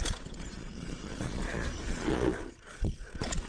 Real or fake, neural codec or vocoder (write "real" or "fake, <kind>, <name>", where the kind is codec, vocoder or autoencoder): fake, vocoder, Vocos